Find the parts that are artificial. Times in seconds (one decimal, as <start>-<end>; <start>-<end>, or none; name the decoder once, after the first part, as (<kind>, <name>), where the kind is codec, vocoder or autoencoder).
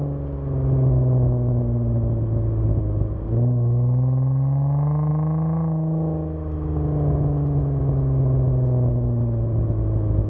none